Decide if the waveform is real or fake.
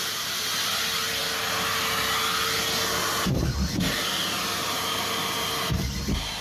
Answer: real